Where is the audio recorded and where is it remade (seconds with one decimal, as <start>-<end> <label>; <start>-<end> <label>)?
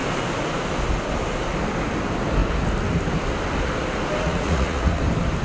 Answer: 0.0-4.2 recorded; 4.2-5.0 remade; 5.0-5.4 recorded